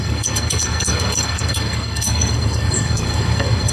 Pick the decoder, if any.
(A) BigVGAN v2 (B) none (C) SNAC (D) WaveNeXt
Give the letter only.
C